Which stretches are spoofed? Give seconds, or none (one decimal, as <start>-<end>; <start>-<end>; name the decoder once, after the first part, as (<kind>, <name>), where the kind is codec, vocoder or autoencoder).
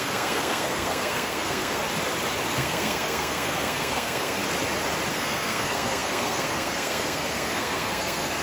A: 0.0-1.8 (codec, SNAC); 2.5-4.4; 5.1-8.4